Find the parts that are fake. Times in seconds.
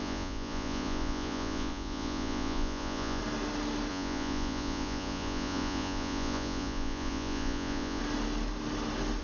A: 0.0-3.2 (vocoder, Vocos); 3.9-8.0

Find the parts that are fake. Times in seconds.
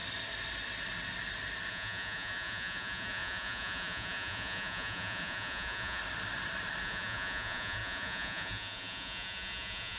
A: 1.7-6.0 (vocoder, Vocos); 6.8-10.0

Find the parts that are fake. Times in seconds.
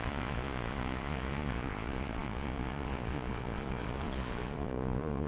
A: 0.0-5.3 (vocoder, Vocos)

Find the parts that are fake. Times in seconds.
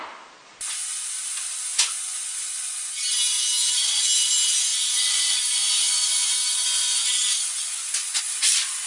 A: 1.7-3.0 (vocoder, Vocos); 4.7-8.2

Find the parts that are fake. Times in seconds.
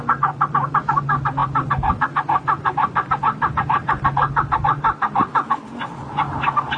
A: none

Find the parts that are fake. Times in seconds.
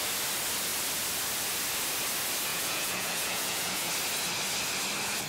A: 2.5-3.9 (vocoder, Vocos)